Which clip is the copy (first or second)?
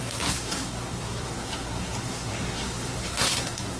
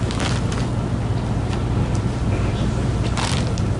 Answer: first